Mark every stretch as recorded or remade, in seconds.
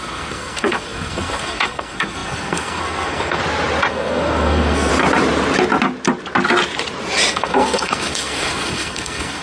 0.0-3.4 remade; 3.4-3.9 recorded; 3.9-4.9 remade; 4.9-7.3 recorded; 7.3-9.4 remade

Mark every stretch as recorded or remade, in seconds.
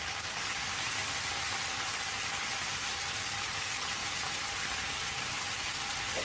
0.0-1.0 recorded; 1.0-2.5 remade; 2.5-4.0 recorded; 4.0-5.7 remade; 5.7-6.2 recorded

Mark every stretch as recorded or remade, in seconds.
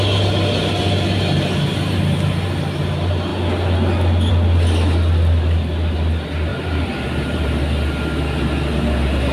0.0-6.5 recorded; 6.5-7.6 remade; 7.6-9.3 recorded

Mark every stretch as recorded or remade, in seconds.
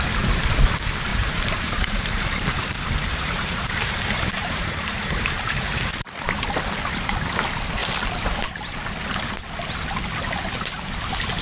0.0-1.1 recorded; 1.1-5.8 remade; 5.8-11.4 recorded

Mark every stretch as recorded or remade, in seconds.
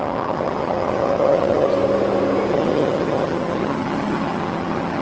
0.0-1.7 remade; 1.7-2.5 recorded; 2.5-5.0 remade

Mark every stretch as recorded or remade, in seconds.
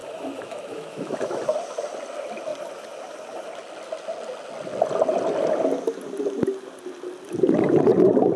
0.0-1.4 remade; 1.4-8.4 recorded